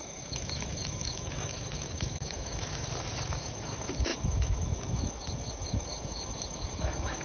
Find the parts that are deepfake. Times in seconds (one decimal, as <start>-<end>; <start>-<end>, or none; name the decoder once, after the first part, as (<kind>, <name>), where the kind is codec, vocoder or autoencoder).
0.0-7.2 (autoencoder, DAC-VAE)